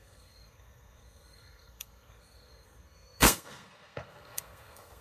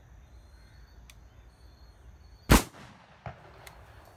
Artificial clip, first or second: first